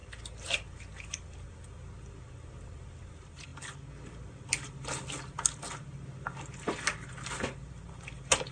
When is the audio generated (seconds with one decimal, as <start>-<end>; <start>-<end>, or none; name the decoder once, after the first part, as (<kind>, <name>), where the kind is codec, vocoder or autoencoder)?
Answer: none